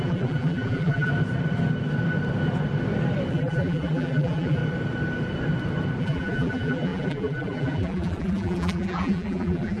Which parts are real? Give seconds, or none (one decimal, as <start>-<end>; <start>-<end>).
1.1-3.3; 4.6-6.0